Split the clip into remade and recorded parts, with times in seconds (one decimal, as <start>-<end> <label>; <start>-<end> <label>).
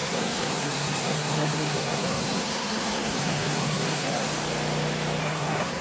0.0-4.3 remade; 4.3-5.2 recorded; 5.2-5.8 remade